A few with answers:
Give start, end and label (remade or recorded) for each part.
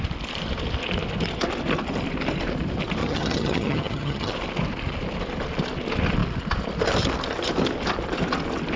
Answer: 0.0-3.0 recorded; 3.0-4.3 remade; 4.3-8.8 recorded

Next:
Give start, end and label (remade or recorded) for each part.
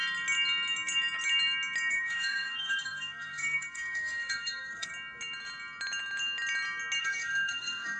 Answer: 0.0-1.9 recorded; 1.9-4.9 remade; 4.9-7.0 recorded; 7.0-8.0 remade